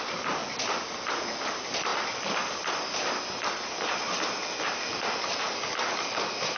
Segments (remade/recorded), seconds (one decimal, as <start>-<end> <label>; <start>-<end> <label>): 0.0-0.4 remade; 0.4-1.4 recorded; 1.4-6.6 remade